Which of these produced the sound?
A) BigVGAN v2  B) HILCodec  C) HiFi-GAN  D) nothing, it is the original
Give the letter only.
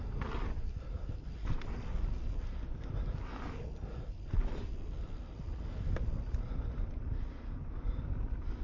D